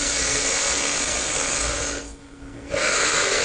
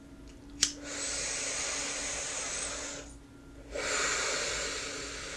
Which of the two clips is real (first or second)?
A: second